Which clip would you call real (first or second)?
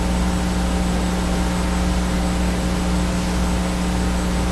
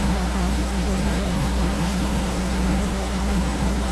first